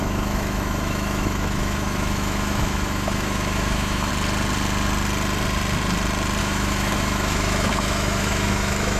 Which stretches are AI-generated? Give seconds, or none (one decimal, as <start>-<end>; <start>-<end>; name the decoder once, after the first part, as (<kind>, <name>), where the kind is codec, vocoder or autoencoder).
0.0-4.1 (autoencoder, DAC-VAE); 6.4-9.0